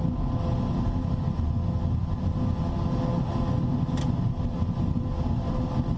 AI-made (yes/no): no